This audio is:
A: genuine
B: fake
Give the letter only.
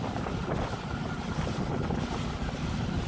A